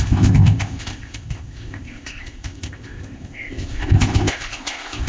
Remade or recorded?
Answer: remade